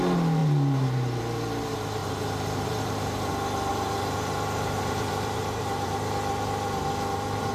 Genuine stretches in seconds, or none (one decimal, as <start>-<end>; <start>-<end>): 0.0-2.0; 3.3-3.7; 5.9-7.5